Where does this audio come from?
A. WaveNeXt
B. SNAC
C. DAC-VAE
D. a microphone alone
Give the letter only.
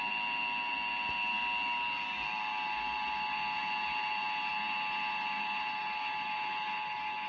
D